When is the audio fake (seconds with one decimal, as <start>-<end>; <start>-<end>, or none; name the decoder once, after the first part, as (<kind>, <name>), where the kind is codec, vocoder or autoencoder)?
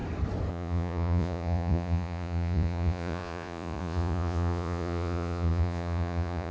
0.5-6.5 (vocoder, Vocos)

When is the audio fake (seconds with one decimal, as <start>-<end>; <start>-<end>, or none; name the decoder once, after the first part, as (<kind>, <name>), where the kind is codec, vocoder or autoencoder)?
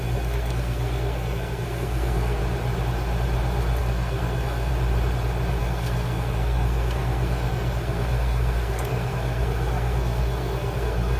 0.0-2.4 (codec, SNAC); 3.8-4.7; 5.6-11.2